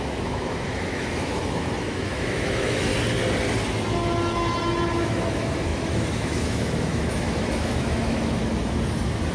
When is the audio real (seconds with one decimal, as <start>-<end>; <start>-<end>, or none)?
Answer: 2.9-5.0; 8.4-9.3